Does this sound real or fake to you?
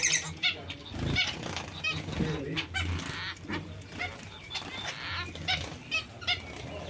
real